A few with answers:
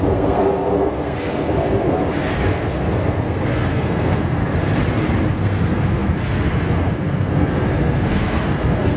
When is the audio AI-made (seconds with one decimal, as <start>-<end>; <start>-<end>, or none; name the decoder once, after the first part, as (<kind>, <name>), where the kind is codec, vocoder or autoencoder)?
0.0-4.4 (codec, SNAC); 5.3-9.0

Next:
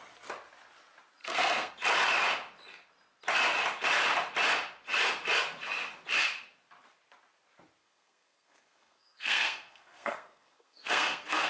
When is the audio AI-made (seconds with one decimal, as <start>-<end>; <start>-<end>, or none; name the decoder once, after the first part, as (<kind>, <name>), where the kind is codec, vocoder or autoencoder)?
1.2-1.7 (codec, SNAC); 7.8-11.5

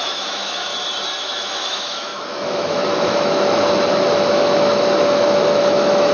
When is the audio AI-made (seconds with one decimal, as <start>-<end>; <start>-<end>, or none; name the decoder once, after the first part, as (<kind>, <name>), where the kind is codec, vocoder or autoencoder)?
0.0-0.7 (autoencoder, DAC-VAE); 1.2-6.1